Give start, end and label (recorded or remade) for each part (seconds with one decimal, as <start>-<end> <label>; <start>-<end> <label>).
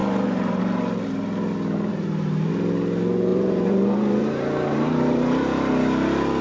0.0-0.6 remade; 0.6-1.9 recorded; 1.9-2.5 remade; 2.5-3.3 recorded; 3.3-5.7 remade; 5.7-6.4 recorded